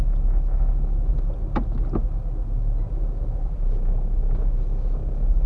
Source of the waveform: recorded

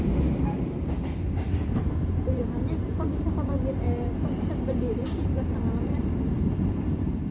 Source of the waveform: remade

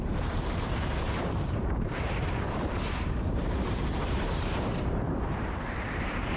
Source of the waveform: remade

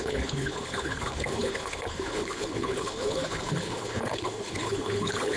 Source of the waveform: remade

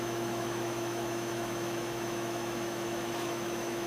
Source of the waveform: remade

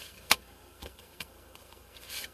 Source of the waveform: remade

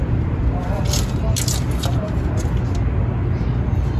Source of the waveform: recorded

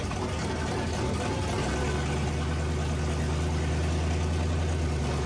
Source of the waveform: recorded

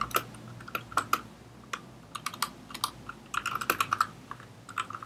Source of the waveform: recorded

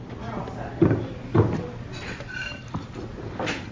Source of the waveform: recorded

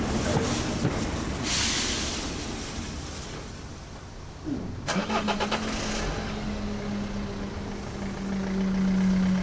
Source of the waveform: recorded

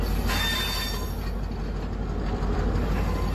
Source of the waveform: recorded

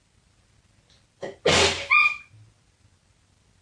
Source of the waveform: recorded